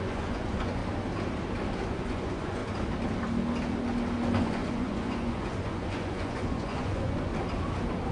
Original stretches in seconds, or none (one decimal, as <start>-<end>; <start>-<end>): 0.8-1.9; 2.6-4.4; 7.3-8.1